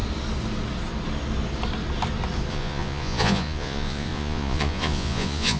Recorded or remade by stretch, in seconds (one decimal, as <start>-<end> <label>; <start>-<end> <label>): 0.0-2.5 recorded; 2.5-5.6 remade